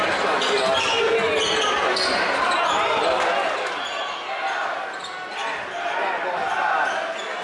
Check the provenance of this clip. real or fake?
real